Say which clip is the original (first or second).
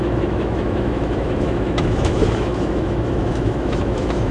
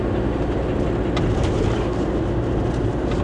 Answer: second